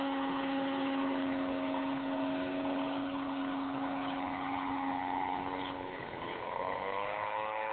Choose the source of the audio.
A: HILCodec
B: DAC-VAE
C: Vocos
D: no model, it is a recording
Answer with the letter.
A